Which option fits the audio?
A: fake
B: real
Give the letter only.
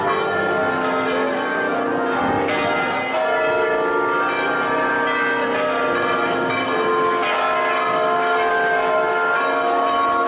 B